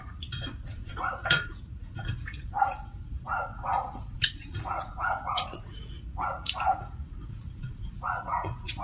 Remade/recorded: remade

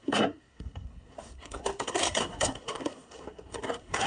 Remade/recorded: remade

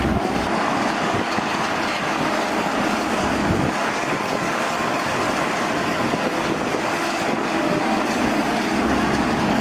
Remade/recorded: remade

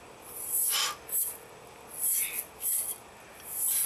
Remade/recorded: recorded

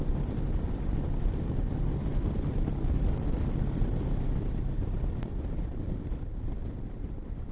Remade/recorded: recorded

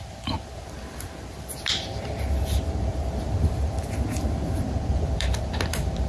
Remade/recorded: remade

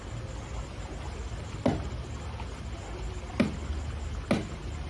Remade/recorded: recorded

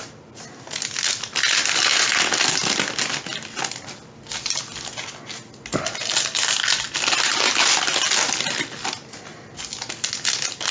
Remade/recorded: recorded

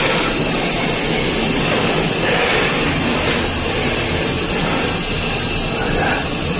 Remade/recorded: recorded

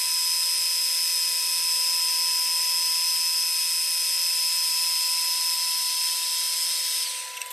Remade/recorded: recorded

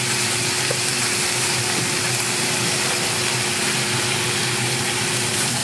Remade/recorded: recorded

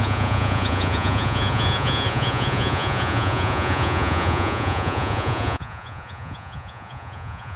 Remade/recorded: remade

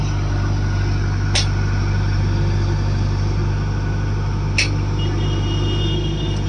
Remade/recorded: recorded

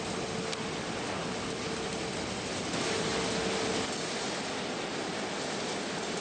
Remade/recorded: recorded